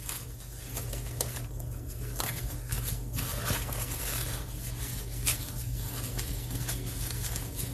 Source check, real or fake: fake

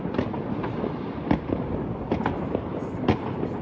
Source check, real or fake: real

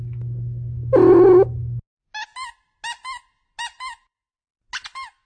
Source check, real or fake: real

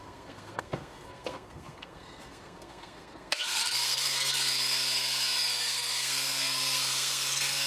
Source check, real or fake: fake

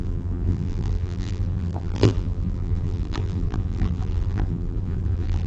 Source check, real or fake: fake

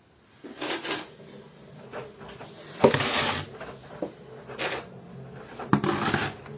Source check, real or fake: real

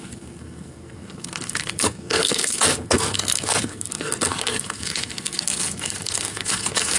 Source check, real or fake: fake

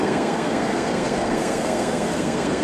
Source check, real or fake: fake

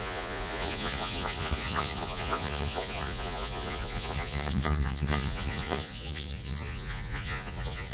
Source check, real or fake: fake